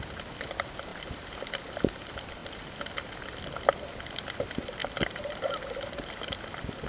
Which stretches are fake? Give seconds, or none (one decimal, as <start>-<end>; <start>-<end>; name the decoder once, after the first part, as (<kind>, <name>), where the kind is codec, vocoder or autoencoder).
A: 0.9-2.0 (vocoder, BigVGAN v2); 4.8-6.5